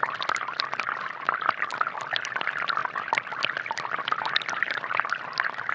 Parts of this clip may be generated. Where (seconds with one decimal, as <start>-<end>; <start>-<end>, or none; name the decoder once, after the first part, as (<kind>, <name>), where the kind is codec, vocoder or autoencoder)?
none